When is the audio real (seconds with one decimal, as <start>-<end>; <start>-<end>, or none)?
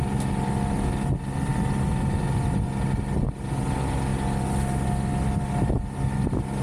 0.0-6.6